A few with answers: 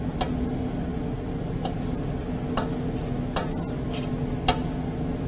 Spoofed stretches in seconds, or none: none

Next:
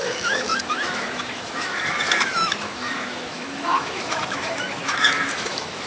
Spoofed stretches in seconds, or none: 0.0-5.9

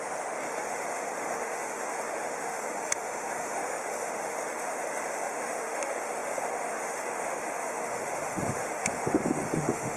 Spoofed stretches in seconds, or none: 0.0-10.0

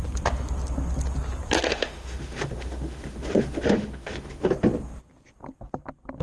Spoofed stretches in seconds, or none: 1.7-4.5

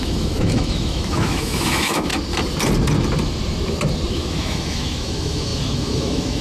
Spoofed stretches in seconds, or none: 0.0-2.1; 4.1-6.4

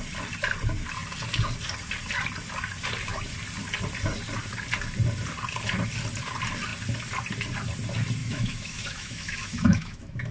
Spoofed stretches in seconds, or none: 8.2-10.3

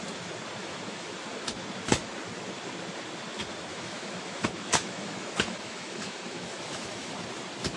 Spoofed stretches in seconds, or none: 0.6-1.2; 3.7-7.1